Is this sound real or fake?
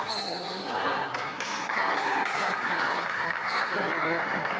fake